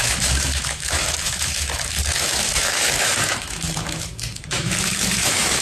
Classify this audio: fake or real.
fake